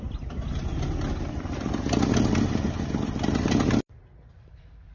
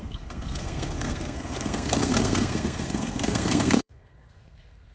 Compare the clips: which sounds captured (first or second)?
first